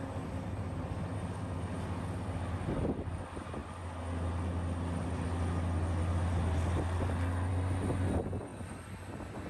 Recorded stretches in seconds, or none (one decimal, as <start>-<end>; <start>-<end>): 0.0-8.5